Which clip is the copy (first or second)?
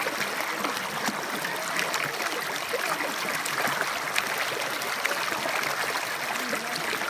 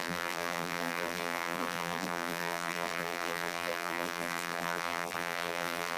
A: second